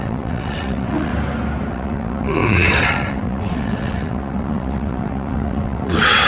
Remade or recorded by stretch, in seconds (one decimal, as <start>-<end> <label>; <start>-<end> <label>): 0.0-1.1 remade; 1.1-1.7 recorded; 1.7-6.3 remade